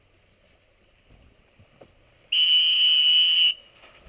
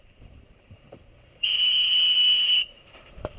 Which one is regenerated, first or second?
second